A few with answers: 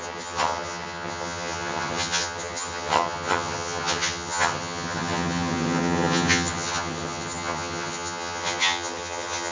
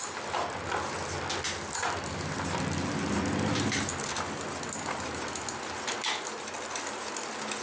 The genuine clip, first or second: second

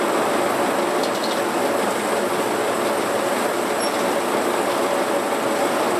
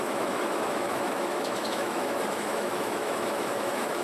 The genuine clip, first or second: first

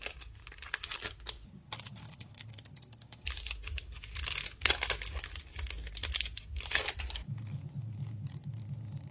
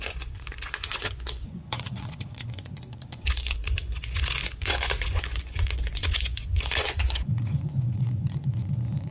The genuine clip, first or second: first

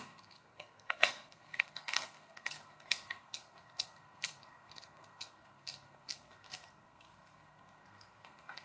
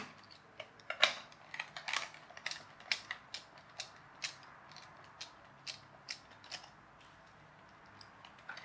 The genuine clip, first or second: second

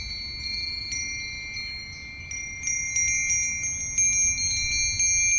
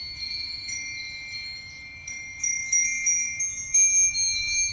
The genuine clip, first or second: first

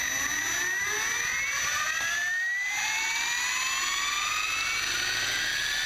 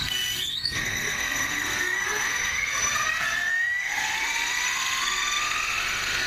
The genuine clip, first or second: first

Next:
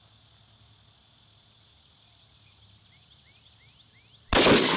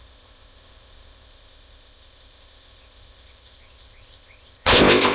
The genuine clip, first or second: first